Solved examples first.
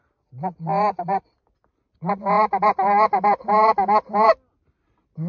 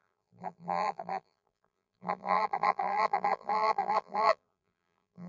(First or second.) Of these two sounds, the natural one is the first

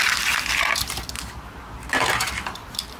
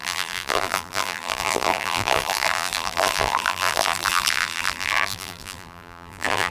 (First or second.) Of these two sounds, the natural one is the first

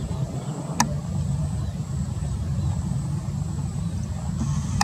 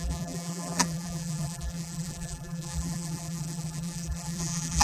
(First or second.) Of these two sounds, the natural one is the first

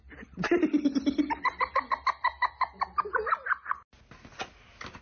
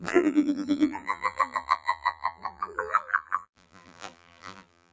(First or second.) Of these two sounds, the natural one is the first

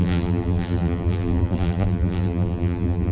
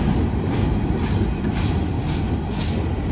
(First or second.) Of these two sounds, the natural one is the second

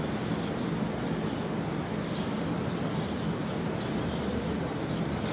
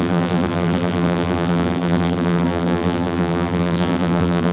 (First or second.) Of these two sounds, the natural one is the first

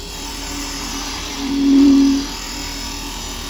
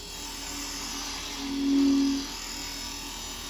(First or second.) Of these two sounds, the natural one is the second